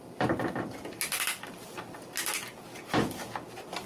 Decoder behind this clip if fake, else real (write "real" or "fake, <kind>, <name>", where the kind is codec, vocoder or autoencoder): real